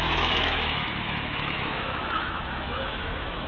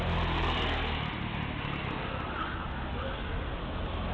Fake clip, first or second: first